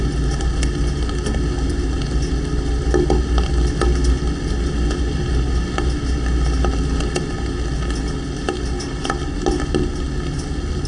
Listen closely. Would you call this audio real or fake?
real